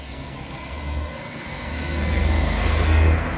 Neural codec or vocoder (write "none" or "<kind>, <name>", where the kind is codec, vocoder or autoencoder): codec, SNAC